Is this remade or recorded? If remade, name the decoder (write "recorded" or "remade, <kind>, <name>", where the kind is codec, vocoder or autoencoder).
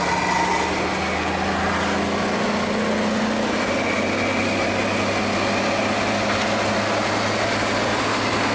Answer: recorded